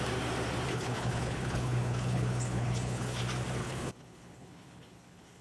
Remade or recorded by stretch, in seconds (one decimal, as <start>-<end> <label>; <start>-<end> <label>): 0.0-0.7 recorded; 0.7-3.2 remade; 3.2-3.6 recorded; 3.6-5.4 remade